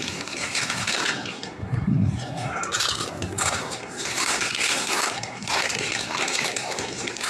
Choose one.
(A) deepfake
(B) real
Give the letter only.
A